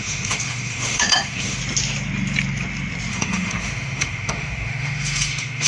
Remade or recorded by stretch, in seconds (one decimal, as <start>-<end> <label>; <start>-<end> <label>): 0.0-1.6 remade; 1.6-3.1 recorded; 3.1-5.7 remade